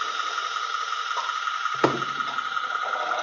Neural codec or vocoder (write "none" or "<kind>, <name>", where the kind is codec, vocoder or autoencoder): none